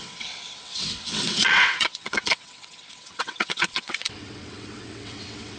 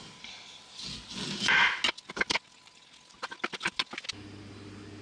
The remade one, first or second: first